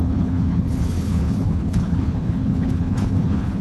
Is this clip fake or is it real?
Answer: fake